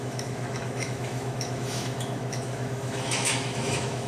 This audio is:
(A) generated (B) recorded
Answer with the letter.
A